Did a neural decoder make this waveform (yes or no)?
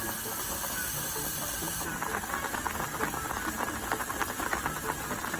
no